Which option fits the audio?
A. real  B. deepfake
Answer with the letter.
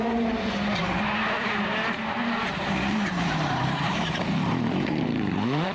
B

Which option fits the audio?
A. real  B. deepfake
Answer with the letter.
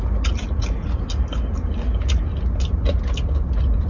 A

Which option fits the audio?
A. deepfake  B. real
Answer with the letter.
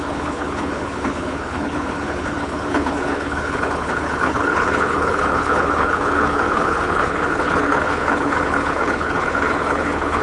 A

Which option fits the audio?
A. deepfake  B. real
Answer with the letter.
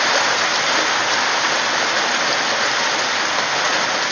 B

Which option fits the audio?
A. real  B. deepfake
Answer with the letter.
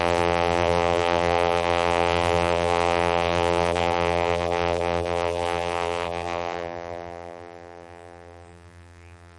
B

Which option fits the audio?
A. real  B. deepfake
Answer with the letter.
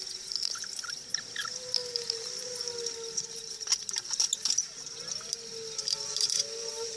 A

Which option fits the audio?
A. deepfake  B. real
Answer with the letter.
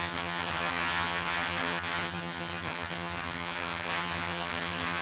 A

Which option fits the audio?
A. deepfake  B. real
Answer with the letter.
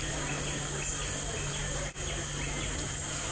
B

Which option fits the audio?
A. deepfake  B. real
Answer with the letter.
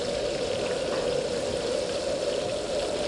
B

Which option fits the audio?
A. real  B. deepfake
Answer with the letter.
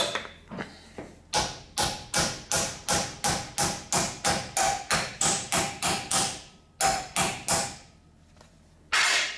A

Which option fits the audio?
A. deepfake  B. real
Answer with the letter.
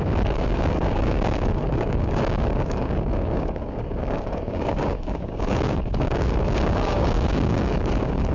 A